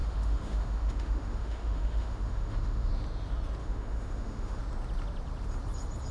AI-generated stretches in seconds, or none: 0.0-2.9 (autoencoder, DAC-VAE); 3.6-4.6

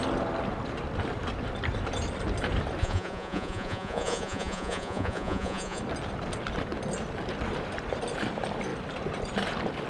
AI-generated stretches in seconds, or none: 2.8-5.8 (vocoder, Vocos)

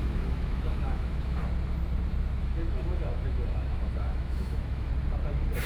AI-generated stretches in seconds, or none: 0.0-1.4 (autoencoder, DAC-VAE); 2.4-4.9

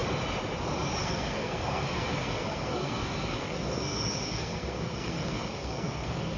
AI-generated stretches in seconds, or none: 1.0-6.4 (codec, SNAC)

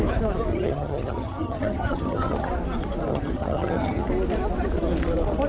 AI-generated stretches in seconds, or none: 0.5-2.5 (vocoder, HiFi-GAN); 3.1-4.1

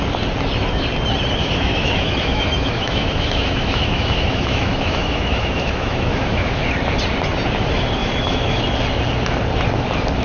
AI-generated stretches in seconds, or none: 1.4-6.6 (autoencoder, DAC-VAE); 8.0-8.6